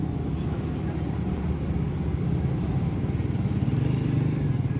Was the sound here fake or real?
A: real